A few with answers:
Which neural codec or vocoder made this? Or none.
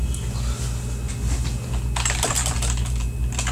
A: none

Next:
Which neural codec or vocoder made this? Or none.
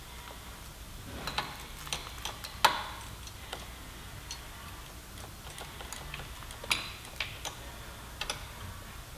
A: none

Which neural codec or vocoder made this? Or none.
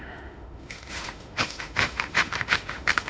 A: autoencoder, DAC-VAE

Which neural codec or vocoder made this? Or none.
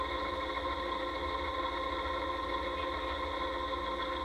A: none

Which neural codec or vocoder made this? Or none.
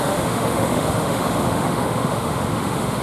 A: autoencoder, DAC-VAE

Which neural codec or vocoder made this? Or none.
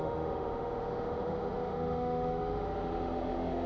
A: autoencoder, DAC-VAE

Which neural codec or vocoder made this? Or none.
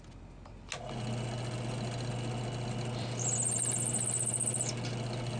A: none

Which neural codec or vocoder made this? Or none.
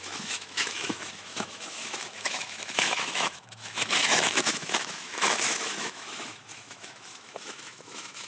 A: autoencoder, DAC-VAE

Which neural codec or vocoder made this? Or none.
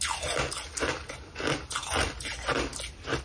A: none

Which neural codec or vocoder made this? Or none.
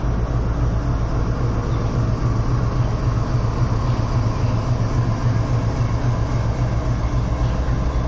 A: none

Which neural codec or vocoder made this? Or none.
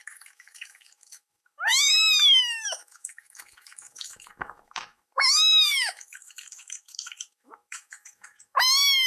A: autoencoder, DAC-VAE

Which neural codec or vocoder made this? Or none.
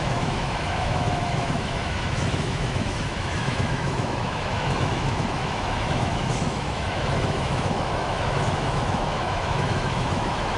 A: autoencoder, DAC-VAE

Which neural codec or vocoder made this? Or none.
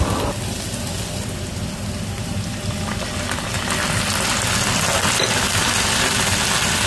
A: none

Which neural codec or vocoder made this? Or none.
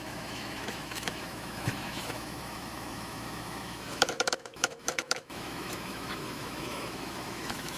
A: autoencoder, DAC-VAE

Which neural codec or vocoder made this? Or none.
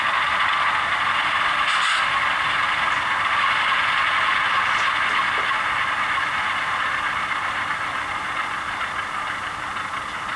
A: none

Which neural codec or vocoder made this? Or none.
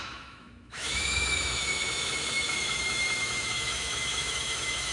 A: autoencoder, DAC-VAE